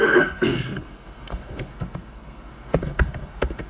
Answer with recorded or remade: remade